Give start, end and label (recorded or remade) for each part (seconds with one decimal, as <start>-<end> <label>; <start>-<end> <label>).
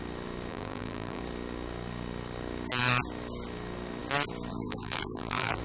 0.0-0.5 recorded; 0.5-1.2 remade; 1.2-4.5 recorded; 4.5-5.6 remade